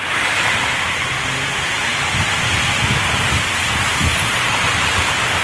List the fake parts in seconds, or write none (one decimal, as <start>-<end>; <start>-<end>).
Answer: none